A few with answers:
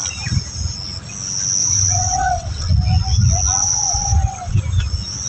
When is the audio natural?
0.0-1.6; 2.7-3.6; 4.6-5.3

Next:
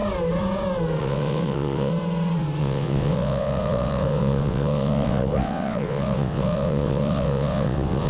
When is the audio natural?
0.0-1.0; 1.9-2.6

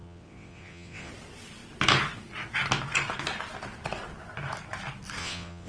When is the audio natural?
1.1-5.2